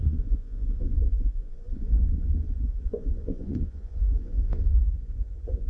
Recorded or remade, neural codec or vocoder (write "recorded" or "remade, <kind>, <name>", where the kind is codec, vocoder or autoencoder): remade, vocoder, Vocos